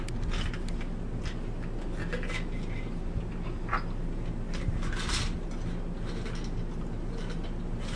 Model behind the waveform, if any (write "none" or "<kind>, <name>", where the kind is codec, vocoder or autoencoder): none